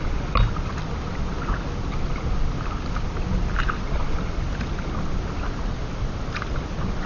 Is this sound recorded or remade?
recorded